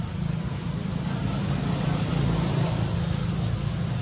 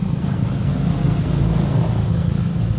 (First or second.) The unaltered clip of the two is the first